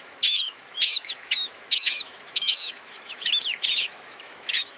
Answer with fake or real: fake